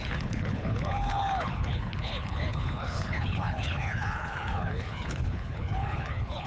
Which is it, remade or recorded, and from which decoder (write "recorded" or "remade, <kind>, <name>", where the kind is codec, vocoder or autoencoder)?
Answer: remade, codec, HILCodec